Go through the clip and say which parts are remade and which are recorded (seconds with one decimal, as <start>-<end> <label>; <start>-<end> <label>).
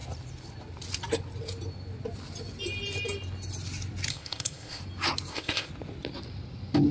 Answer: 0.0-4.1 recorded; 4.1-4.8 remade; 4.8-5.3 recorded; 5.3-5.7 remade; 5.7-6.9 recorded